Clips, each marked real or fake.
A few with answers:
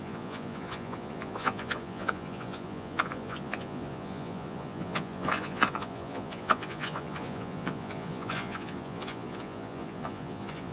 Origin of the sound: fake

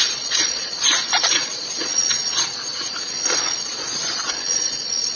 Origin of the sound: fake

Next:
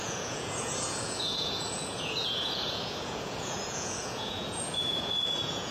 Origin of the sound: fake